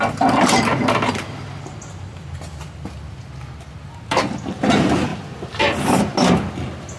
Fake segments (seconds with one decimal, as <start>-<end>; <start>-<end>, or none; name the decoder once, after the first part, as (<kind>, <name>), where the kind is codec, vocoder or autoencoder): none